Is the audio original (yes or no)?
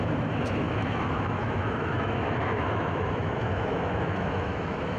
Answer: no